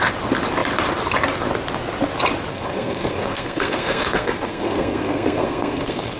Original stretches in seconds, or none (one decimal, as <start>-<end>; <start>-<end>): 0.0-2.5